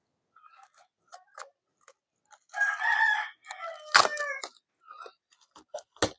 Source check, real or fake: real